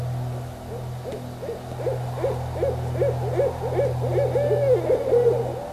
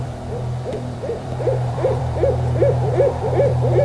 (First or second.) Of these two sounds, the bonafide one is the first